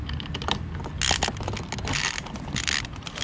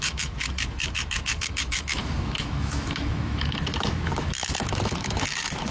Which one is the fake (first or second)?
second